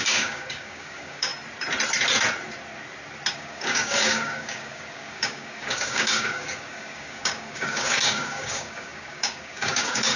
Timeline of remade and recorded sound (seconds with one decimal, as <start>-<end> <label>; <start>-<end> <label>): 0.0-1.3 remade; 1.3-3.3 recorded; 3.3-10.2 remade